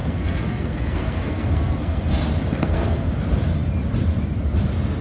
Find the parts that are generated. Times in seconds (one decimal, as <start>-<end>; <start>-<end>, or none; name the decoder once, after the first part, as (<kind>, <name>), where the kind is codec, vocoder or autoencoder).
0.0-2.0 (codec, SNAC); 2.6-3.1